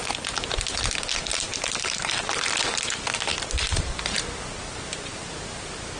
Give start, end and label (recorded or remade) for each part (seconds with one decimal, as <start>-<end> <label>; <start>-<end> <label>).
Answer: 0.0-1.5 recorded; 1.5-2.4 remade; 2.4-3.3 recorded; 3.3-3.9 remade; 3.9-6.0 recorded

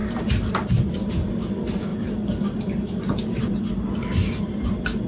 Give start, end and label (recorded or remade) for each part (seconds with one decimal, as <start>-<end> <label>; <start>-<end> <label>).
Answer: 0.0-1.3 remade; 1.3-1.9 recorded; 1.9-3.4 remade; 3.4-5.1 recorded